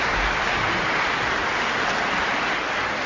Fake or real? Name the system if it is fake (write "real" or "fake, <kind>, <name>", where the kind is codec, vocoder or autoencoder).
real